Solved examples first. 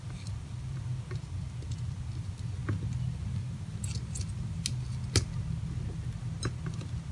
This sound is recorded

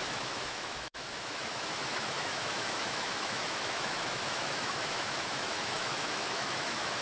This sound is remade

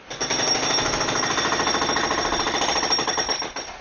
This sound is recorded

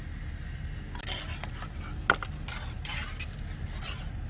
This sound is recorded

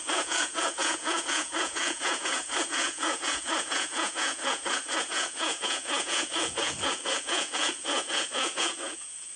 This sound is remade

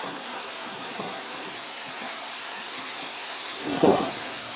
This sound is remade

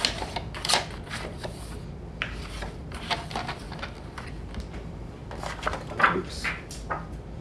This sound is recorded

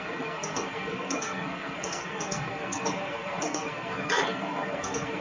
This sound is remade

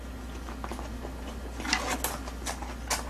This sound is recorded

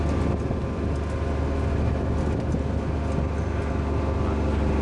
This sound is recorded